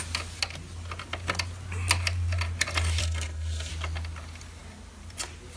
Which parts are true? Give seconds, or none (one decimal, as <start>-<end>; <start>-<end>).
0.0-3.0; 3.7-5.6